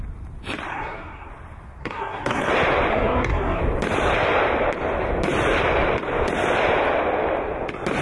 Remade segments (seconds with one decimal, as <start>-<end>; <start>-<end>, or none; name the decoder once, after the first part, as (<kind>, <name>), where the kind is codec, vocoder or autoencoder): 0.7-1.3 (codec, SNAC); 1.8-2.5; 2.9-3.6